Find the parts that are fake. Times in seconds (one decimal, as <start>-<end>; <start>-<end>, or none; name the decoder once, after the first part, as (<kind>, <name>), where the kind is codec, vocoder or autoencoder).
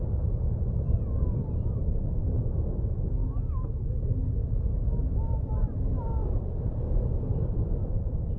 none